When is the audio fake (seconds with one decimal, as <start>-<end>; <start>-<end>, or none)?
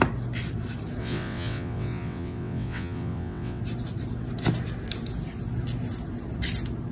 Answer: 1.0-3.6